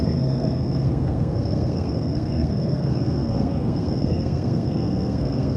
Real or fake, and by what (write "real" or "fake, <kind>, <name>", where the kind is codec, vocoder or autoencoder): fake, codec, SNAC